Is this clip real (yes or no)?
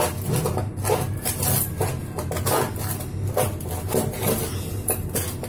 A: yes